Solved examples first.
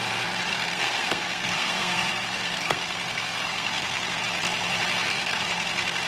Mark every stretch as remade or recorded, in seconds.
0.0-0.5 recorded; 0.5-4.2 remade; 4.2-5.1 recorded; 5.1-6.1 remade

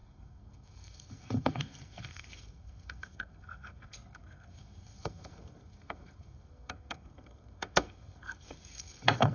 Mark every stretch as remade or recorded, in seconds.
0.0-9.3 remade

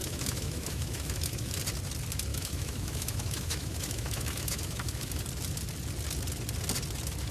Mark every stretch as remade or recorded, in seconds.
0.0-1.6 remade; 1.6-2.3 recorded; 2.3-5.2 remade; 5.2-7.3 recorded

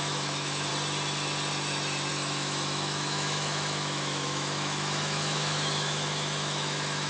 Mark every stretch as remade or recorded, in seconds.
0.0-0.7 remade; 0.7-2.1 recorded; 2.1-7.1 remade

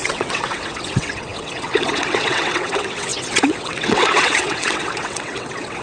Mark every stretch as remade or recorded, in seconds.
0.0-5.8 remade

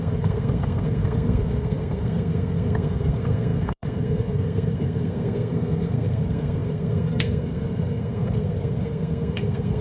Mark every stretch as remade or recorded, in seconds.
0.0-9.8 remade

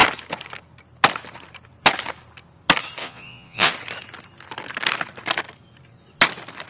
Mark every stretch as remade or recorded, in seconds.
0.0-3.0 recorded; 3.0-3.7 remade; 3.7-6.7 recorded

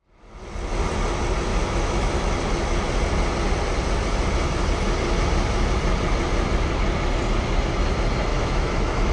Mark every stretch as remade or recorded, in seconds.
0.0-1.5 recorded; 1.5-2.3 remade; 2.3-8.3 recorded; 8.3-9.1 remade